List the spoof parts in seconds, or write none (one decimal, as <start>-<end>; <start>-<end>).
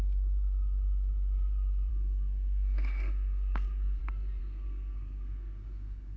1.9-4.0; 4.4-6.2